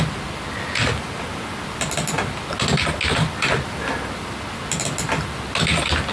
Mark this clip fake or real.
real